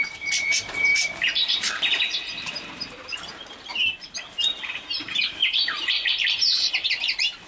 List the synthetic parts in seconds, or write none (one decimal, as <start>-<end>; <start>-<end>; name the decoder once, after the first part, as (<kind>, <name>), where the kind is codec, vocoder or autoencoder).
0.0-3.7 (vocoder, BigVGAN v2); 4.3-7.5